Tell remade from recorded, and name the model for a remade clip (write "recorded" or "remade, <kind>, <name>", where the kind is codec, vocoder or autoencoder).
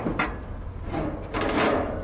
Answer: recorded